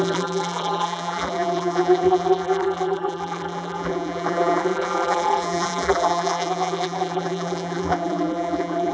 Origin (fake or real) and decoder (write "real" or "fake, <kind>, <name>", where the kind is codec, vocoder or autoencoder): fake, vocoder, BigVGAN v2